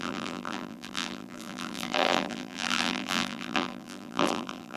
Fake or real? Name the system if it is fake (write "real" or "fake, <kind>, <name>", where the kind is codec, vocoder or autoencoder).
fake, vocoder, BigVGAN v2